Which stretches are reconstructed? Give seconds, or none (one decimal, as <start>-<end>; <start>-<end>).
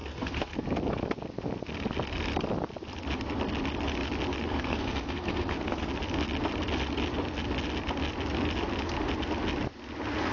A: 0.0-0.6; 4.5-5.9